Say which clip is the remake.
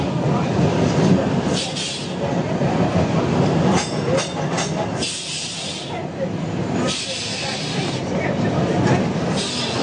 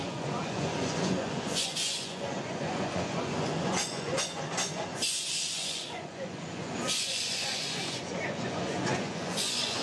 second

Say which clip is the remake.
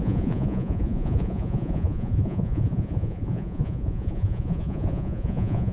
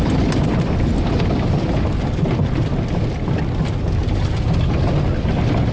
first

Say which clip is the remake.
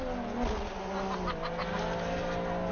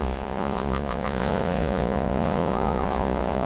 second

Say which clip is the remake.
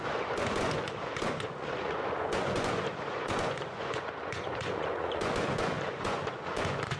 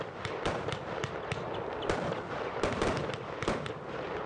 first